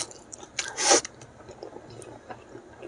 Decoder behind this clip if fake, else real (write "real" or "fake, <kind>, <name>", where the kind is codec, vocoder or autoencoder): real